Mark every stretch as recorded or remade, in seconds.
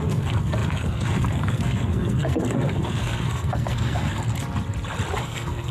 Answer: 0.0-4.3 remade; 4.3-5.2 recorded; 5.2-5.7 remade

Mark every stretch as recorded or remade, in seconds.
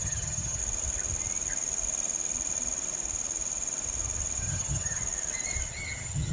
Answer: 0.0-0.6 remade; 0.6-4.4 recorded; 4.4-5.0 remade; 5.0-5.7 recorded; 5.7-6.3 remade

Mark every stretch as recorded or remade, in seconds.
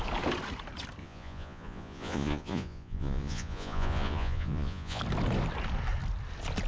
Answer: 0.0-1.0 recorded; 1.0-5.0 remade; 5.0-6.7 recorded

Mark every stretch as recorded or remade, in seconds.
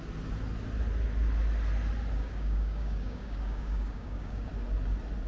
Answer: 0.0-2.2 recorded; 2.2-4.5 remade; 4.5-5.3 recorded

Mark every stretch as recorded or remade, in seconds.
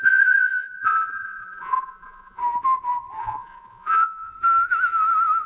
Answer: 0.0-2.4 remade; 2.4-3.2 recorded; 3.2-4.3 remade; 4.3-5.5 recorded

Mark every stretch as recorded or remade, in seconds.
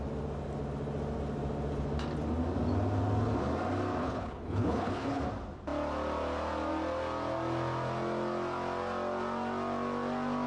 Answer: 0.0-4.0 recorded; 4.0-5.2 remade; 5.2-10.5 recorded